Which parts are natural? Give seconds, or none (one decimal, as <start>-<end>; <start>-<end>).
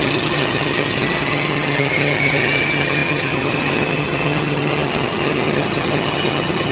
none